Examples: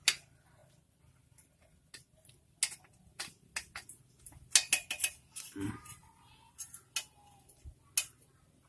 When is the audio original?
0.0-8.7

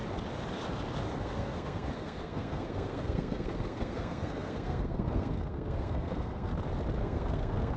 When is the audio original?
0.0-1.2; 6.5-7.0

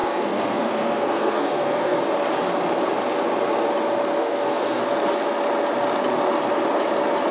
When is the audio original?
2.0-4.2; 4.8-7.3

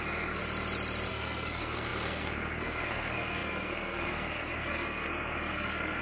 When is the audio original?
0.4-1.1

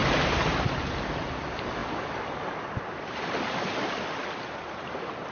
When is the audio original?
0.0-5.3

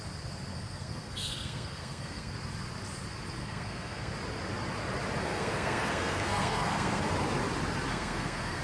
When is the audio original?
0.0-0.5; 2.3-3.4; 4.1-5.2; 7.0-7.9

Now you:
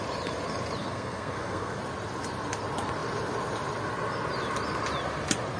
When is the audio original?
0.0-0.8; 1.8-5.6